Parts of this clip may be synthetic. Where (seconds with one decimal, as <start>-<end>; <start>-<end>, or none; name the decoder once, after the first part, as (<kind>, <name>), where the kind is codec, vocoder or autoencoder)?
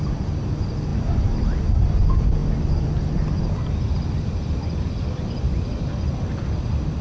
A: none